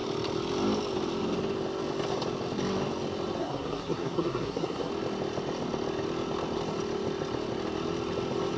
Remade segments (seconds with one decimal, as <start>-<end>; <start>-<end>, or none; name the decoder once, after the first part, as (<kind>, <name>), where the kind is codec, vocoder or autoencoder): 3.4-4.9 (codec, SNAC)